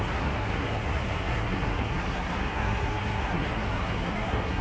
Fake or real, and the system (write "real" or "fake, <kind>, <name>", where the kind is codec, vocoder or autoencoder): fake, codec, SNAC